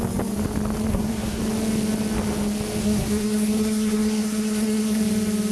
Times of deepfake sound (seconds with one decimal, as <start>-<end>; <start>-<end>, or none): 0.9-1.4; 2.8-5.0